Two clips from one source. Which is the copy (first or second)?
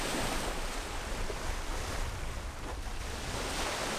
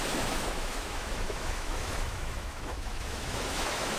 second